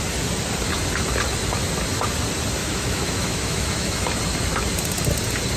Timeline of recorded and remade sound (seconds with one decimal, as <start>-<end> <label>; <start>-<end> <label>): 0.0-2.6 recorded; 2.6-4.2 remade; 4.2-5.6 recorded